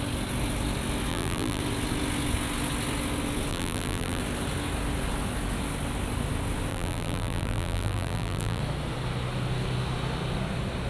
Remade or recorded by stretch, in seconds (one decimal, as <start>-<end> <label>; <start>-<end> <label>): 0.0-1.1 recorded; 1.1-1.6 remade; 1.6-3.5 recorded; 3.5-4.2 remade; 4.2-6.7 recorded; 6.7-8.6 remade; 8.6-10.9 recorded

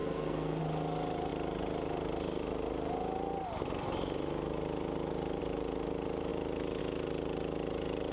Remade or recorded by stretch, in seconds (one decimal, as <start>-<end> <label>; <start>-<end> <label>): 0.0-0.6 remade; 0.6-8.1 recorded

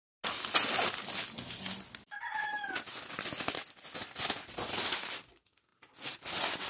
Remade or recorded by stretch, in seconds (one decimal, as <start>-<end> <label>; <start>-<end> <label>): 0.0-6.7 recorded